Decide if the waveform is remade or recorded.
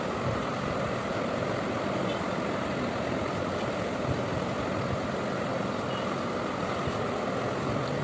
recorded